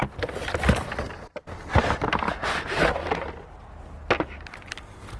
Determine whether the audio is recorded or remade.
recorded